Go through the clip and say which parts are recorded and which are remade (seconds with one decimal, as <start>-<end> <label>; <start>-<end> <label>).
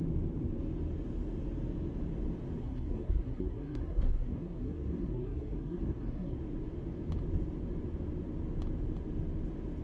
0.0-2.6 recorded; 2.6-6.4 remade; 6.4-9.8 recorded